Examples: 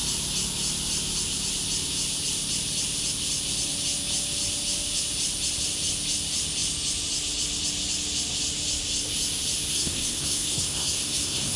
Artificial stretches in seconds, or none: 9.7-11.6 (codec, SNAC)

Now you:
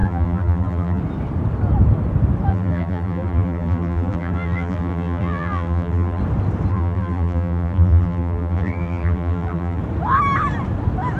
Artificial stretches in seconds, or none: 0.0-1.0 (vocoder, BigVGAN v2); 2.5-6.2; 6.7-9.8